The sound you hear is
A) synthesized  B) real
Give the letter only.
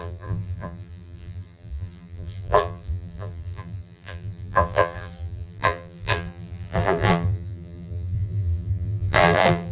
A